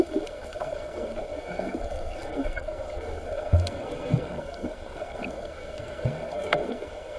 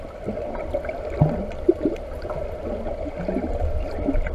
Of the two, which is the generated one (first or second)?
first